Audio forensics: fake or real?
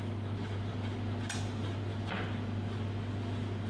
real